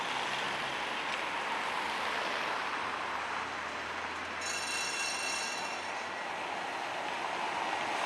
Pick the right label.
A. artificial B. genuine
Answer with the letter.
B